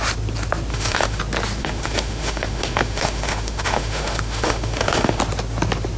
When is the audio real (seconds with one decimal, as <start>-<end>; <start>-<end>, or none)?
0.0-0.7; 1.2-1.6; 5.2-6.0